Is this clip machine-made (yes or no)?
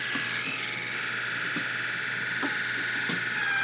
no